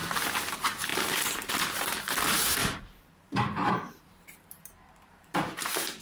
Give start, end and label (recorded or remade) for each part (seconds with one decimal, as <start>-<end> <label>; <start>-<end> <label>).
0.0-0.5 recorded; 0.5-6.0 remade